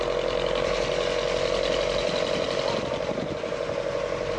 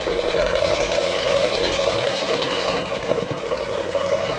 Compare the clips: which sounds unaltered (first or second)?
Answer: first